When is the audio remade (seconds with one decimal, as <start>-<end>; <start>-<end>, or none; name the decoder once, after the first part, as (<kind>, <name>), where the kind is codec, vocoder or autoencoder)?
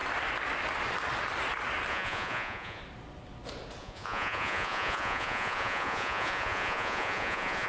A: 1.9-2.8 (vocoder, Vocos); 3.8-7.7